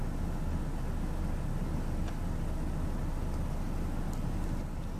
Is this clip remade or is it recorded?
recorded